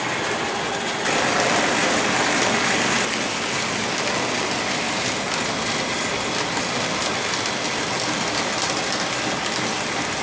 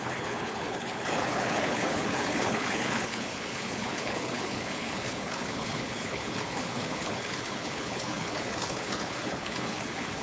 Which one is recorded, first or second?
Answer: first